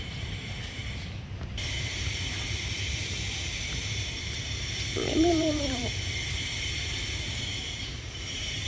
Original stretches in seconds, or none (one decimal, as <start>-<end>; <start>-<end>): none